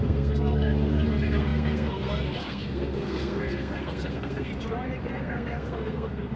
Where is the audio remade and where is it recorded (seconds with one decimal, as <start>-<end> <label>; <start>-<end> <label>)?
0.0-4.5 remade; 4.5-5.1 recorded; 5.1-6.4 remade

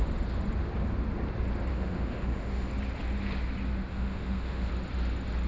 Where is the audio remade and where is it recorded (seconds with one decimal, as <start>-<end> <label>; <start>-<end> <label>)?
0.0-1.7 recorded; 1.7-2.7 remade; 2.7-3.9 recorded; 3.9-4.7 remade; 4.7-5.5 recorded

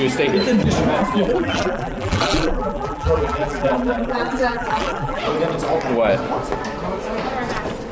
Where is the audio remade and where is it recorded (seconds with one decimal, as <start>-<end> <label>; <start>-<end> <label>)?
0.0-1.0 recorded; 1.0-5.2 remade; 5.2-7.9 recorded

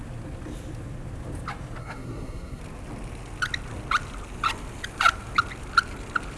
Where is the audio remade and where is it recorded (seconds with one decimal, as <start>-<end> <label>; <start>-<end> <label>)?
0.0-1.8 recorded; 1.8-2.6 remade; 2.6-6.4 recorded

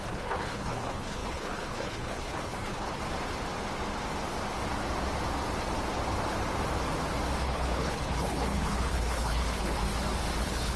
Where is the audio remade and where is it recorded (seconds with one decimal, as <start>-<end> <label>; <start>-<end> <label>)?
0.0-3.0 remade; 3.0-7.4 recorded; 7.4-9.8 remade; 9.8-10.4 recorded; 10.4-10.8 remade

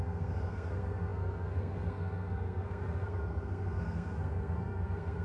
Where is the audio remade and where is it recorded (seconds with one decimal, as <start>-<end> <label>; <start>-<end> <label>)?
0.0-5.2 remade